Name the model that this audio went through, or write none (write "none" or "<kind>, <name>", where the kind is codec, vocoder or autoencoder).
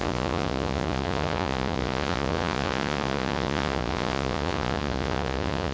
vocoder, Vocos